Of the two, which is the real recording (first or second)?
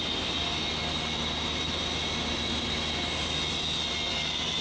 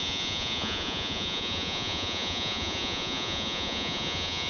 first